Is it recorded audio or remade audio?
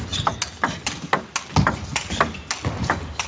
recorded